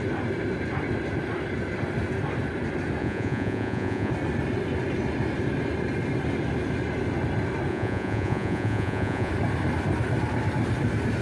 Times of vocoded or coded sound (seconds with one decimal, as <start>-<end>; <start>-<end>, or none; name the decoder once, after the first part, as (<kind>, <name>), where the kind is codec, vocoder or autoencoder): 3.0-4.1 (vocoder, Vocos); 7.7-9.3